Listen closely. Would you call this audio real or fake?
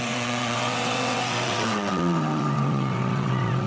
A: fake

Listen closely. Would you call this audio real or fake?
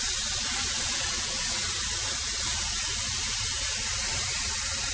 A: real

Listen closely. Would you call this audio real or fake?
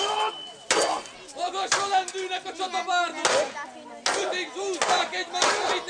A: real